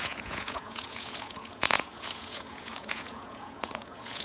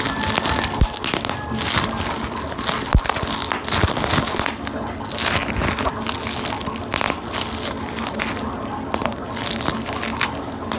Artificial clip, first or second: first